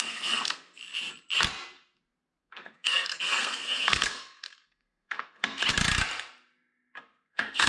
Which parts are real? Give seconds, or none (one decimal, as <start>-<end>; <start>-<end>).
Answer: 0.8-2.4; 5.6-7.0